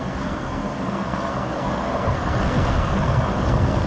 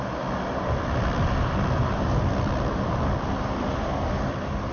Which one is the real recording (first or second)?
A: second